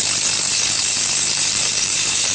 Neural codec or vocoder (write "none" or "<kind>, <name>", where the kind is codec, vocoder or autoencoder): vocoder, BigVGAN v2